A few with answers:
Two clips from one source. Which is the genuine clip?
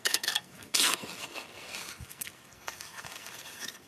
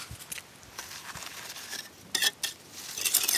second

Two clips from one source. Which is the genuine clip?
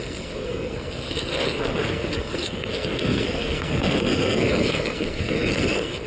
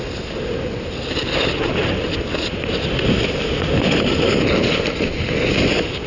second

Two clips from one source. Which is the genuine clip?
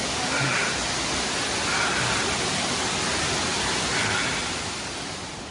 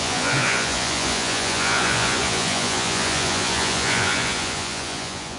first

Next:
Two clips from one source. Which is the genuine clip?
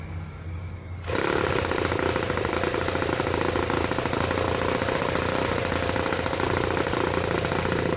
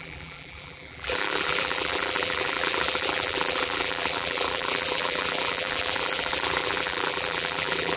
first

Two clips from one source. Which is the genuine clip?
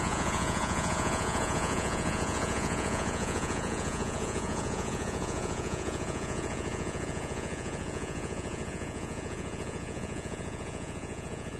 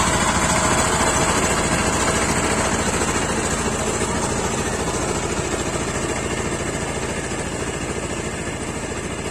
second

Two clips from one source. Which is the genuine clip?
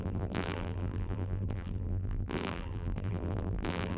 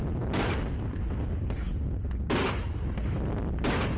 second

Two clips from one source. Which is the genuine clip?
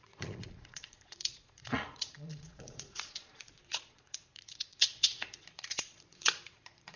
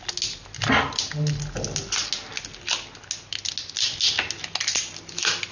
second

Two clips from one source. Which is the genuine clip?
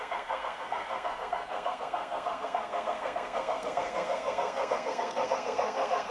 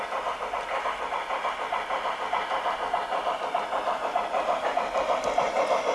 second